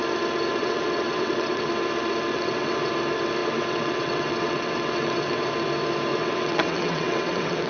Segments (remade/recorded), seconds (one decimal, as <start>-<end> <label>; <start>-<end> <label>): 0.0-0.6 recorded; 0.6-1.7 remade; 1.7-2.3 recorded; 2.3-2.9 remade; 2.9-3.4 recorded; 3.4-5.5 remade; 5.5-6.1 recorded; 6.1-7.7 remade